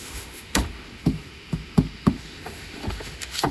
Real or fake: fake